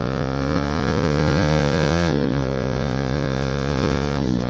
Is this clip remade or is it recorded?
remade